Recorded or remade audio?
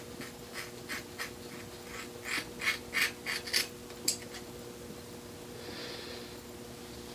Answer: recorded